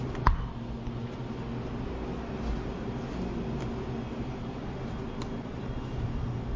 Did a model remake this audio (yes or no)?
no